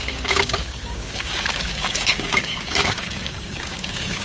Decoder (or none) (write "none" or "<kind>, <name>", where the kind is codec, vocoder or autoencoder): codec, DAC